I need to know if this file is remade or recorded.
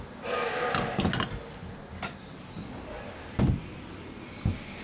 recorded